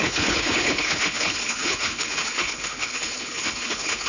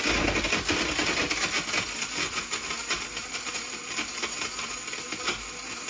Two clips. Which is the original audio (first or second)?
second